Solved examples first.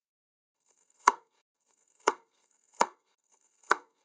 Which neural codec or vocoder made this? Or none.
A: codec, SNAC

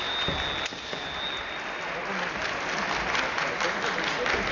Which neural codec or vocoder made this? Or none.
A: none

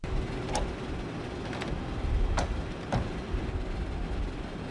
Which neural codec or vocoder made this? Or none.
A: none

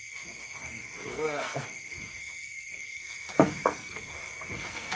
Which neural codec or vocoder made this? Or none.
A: codec, SNAC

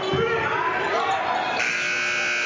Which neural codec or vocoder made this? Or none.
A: none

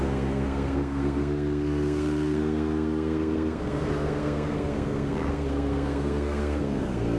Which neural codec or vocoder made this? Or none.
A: codec, SNAC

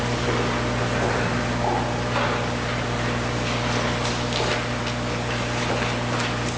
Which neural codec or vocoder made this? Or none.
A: none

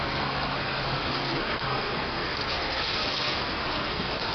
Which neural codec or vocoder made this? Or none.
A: codec, SNAC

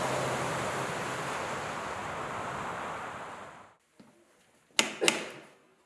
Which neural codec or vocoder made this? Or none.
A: none